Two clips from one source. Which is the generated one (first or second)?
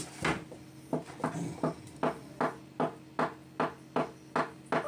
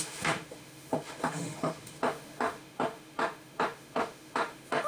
second